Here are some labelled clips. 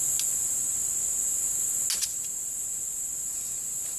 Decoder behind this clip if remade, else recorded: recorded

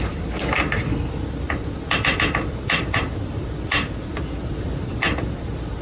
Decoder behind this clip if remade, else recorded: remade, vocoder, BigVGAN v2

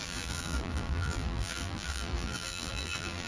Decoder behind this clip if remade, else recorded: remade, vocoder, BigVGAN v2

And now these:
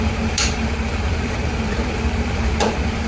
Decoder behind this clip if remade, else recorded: remade, vocoder, BigVGAN v2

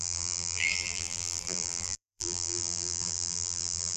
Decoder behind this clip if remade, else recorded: remade, vocoder, BigVGAN v2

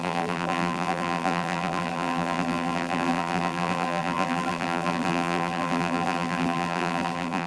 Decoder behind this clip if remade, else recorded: remade, vocoder, BigVGAN v2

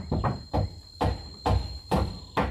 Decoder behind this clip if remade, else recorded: recorded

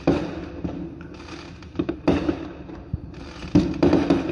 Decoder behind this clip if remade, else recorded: recorded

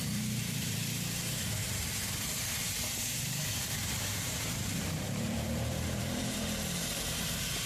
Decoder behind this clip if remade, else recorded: remade, vocoder, BigVGAN v2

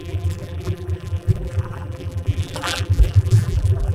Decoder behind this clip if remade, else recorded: remade, vocoder, BigVGAN v2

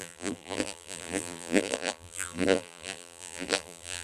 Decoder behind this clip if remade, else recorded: remade, vocoder, BigVGAN v2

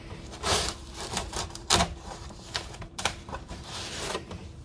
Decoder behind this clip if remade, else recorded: remade, vocoder, BigVGAN v2